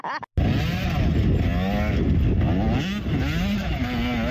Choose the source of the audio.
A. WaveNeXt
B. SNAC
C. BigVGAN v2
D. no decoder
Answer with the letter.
D